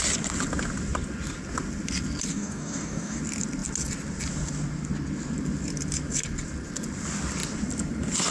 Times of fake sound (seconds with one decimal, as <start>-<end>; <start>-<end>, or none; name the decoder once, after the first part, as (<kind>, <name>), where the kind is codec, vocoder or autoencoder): 2.3-3.2 (codec, DAC)